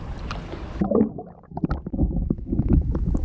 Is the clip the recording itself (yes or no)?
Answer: yes